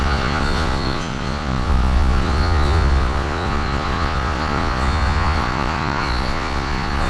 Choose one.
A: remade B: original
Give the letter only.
A